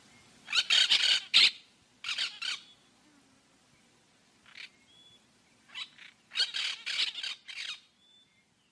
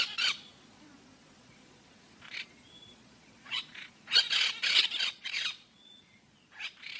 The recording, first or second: first